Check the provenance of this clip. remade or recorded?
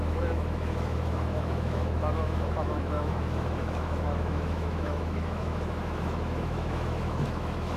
remade